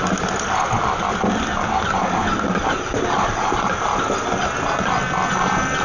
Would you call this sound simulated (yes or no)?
no